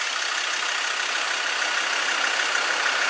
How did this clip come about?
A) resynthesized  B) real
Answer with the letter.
B